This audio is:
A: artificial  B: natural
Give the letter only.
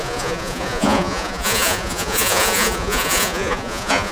A